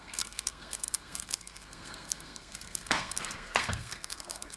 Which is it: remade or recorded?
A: remade